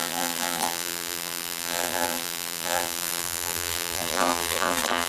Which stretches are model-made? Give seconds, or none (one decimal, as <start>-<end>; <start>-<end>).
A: 0.0-5.1